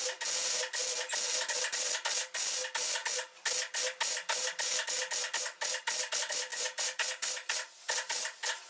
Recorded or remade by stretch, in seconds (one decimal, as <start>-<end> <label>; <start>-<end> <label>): 0.0-6.5 recorded; 6.5-7.3 remade; 7.3-8.7 recorded